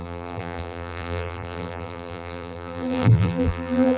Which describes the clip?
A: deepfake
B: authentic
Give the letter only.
A